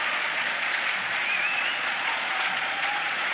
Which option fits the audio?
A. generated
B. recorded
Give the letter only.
A